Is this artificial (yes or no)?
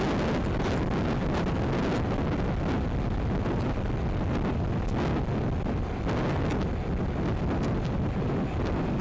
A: no